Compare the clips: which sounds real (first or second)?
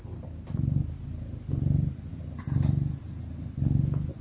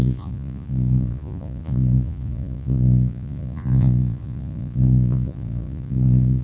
first